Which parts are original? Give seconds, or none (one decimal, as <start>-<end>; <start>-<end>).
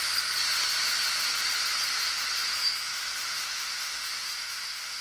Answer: 0.0-2.6